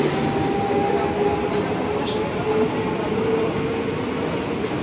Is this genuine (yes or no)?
yes